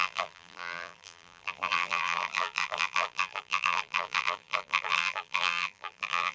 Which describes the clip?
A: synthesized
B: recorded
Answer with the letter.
A